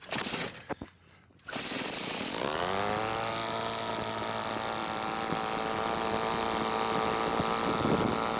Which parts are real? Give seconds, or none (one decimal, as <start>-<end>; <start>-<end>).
0.0-8.4